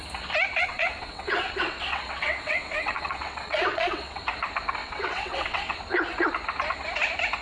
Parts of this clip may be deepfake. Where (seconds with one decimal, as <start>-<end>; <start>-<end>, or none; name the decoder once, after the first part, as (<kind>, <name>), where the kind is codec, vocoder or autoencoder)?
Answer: 0.6-4.2 (vocoder, WaveNeXt); 4.8-5.8